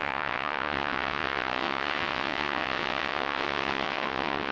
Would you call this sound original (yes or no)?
no